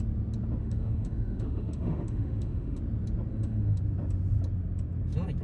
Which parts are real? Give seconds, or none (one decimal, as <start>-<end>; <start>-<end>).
0.0-0.6; 2.8-3.3; 3.8-5.4